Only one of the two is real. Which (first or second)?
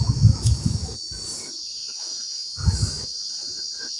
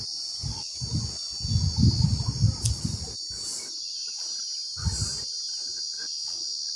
second